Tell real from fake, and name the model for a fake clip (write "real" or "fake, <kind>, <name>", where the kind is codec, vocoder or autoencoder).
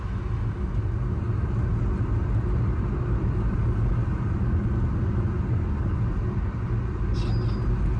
real